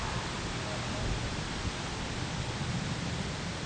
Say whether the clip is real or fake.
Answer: real